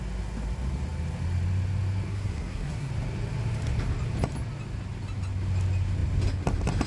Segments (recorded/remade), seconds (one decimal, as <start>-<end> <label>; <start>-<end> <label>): 0.0-2.1 recorded; 2.1-2.9 remade; 2.9-6.9 recorded